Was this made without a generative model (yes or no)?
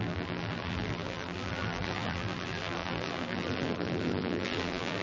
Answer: no